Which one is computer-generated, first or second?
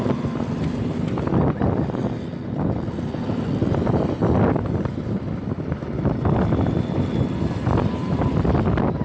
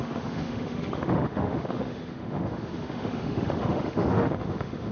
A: second